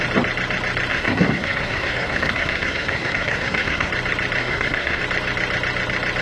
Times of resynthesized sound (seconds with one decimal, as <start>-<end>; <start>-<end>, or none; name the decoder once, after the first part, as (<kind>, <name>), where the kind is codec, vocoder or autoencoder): 0.9-3.9 (codec, SNAC); 4.4-5.0